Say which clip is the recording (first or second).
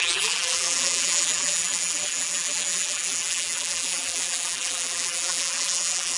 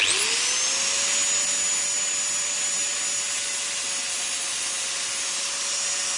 second